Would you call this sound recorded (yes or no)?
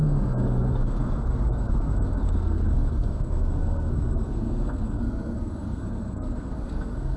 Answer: no